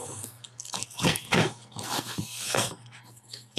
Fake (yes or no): yes